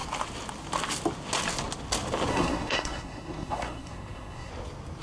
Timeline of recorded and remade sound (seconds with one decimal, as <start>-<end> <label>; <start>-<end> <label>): 0.0-2.3 recorded; 2.3-4.5 remade; 4.5-5.0 recorded